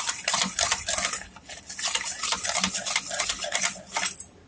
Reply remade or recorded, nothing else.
recorded